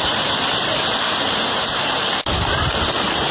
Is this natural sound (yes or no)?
yes